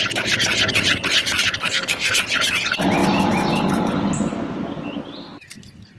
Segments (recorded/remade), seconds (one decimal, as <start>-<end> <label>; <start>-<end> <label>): 0.0-1.6 recorded; 1.6-2.2 remade; 2.2-6.0 recorded